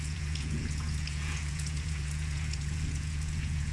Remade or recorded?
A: remade